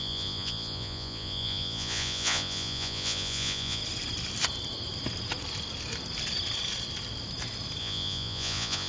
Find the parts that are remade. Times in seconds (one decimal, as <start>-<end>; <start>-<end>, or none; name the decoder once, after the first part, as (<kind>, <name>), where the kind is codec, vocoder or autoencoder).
0.0-3.8 (vocoder, Vocos); 7.8-8.9

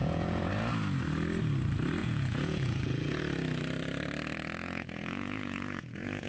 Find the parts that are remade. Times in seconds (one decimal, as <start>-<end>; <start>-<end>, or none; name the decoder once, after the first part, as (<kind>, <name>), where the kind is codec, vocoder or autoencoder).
0.0-0.5 (vocoder, Vocos); 2.0-3.2; 4.6-6.3